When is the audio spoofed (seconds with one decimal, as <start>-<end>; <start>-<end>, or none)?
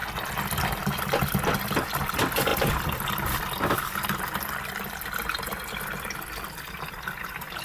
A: none